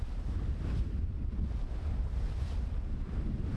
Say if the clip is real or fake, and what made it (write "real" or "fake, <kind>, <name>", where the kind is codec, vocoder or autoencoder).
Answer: real